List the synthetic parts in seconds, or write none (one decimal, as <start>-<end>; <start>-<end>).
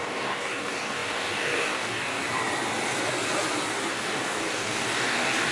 0.0-2.2; 3.9-5.5